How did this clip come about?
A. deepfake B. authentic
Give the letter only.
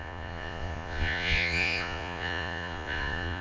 A